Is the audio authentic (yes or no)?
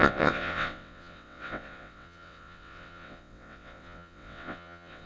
no